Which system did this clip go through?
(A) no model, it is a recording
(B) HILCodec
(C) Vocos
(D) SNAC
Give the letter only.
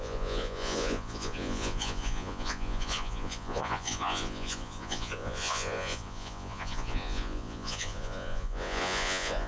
C